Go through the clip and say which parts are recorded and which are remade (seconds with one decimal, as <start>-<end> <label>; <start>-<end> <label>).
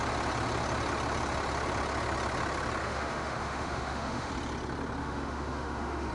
0.0-2.8 recorded; 2.8-4.3 remade; 4.3-5.0 recorded; 5.0-6.1 remade